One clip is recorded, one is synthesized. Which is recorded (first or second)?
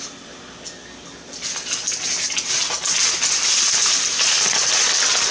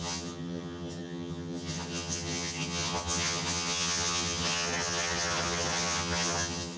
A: first